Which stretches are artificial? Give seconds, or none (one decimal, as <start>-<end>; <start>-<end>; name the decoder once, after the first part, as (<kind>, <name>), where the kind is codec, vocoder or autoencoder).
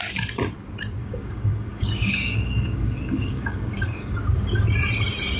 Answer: 1.0-4.2 (codec, DAC)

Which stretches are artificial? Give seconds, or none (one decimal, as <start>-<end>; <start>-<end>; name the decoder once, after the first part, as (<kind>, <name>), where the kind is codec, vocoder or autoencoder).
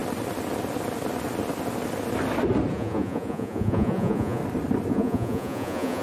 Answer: 2.7-4.4 (vocoder, Vocos); 4.9-6.0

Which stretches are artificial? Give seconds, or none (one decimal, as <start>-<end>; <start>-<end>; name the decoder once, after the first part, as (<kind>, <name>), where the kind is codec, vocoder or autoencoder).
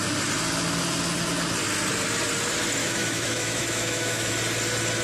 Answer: 2.8-4.3 (autoencoder, DAC-VAE)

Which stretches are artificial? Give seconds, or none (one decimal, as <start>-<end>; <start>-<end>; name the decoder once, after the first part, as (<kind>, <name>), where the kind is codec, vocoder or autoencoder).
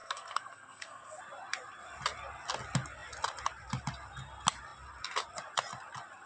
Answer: 0.0-1.2 (codec, SNAC)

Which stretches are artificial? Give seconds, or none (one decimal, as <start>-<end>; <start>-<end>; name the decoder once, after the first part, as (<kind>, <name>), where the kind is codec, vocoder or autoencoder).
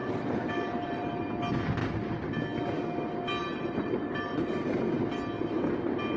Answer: 0.0-1.2 (vocoder, BigVGAN v2); 3.4-4.8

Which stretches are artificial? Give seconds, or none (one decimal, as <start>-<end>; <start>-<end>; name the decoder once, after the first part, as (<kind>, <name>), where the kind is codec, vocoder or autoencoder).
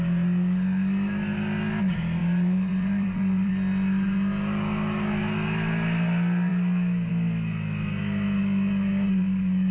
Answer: 2.2-3.5 (vocoder, BigVGAN v2)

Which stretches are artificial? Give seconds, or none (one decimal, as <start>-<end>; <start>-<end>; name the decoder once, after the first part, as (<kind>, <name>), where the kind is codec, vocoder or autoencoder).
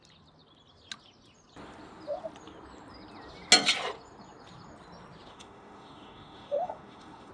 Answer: 5.3-7.3 (autoencoder, DAC-VAE)